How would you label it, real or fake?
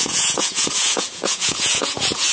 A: fake